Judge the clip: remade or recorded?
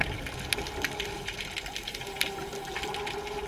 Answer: recorded